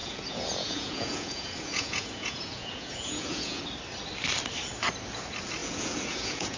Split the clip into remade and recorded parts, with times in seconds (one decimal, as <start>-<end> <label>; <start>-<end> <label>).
0.0-3.6 remade; 3.6-5.6 recorded; 5.6-6.6 remade